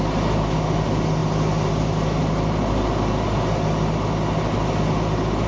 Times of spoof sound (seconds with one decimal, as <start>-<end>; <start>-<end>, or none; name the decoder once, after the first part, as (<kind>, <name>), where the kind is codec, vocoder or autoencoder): none